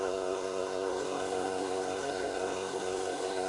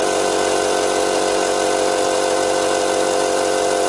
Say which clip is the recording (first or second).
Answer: second